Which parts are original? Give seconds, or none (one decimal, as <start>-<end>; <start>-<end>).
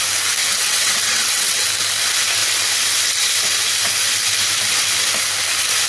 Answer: 0.0-0.4; 1.7-5.9